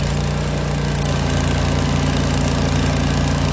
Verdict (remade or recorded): recorded